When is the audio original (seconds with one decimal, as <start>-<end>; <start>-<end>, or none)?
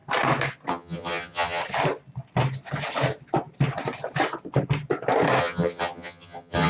0.0-0.7; 1.6-5.4